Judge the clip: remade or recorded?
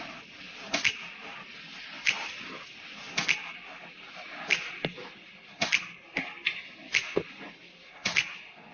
recorded